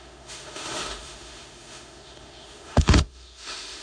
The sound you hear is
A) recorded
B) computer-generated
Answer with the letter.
B